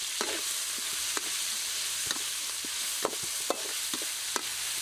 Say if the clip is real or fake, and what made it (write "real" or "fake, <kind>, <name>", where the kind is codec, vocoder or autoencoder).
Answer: real